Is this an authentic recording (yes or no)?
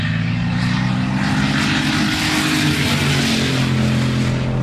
yes